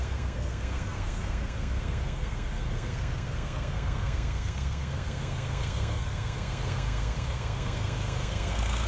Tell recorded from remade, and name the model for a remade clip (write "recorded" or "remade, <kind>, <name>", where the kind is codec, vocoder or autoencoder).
remade, codec, SNAC